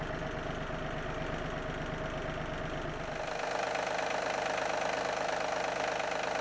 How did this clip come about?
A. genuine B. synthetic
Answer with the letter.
A